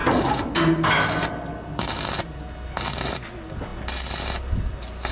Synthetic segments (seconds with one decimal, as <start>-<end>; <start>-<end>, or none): none